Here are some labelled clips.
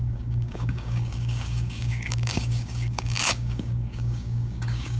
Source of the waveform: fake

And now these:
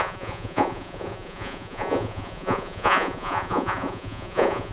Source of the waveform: fake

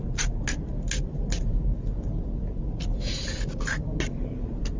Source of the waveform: real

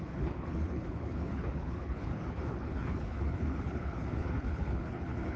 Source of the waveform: fake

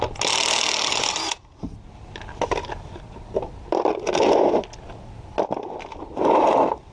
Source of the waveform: real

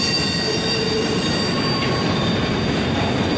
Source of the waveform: real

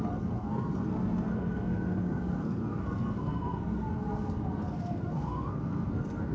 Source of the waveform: fake